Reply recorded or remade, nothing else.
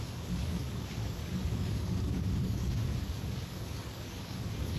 remade